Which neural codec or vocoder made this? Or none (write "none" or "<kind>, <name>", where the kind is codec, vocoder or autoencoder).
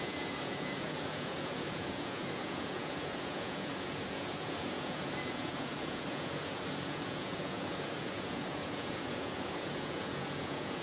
vocoder, Vocos